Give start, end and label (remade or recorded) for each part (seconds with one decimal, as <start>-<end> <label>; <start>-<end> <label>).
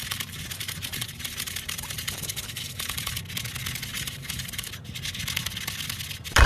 0.0-3.2 remade; 3.2-3.9 recorded; 3.9-4.7 remade; 4.7-6.5 recorded